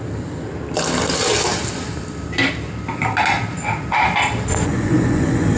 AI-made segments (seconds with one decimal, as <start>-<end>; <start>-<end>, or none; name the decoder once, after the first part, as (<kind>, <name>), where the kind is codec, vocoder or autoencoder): 4.5-5.6 (vocoder, Vocos)